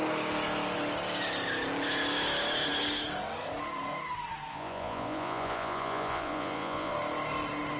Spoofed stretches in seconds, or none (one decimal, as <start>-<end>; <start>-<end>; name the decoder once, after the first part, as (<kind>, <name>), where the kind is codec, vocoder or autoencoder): 4.5-6.9 (vocoder, Vocos)